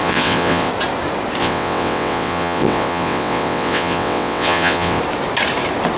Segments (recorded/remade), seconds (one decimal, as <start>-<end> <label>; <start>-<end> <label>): 0.0-0.7 remade; 0.7-1.4 recorded; 1.4-5.0 remade; 5.0-6.0 recorded